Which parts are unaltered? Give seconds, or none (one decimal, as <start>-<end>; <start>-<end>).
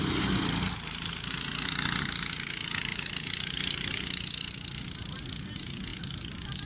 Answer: 0.0-2.9; 5.1-6.7